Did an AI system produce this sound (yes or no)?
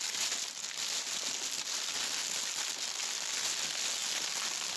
no